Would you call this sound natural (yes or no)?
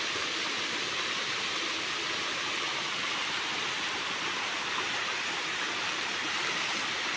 yes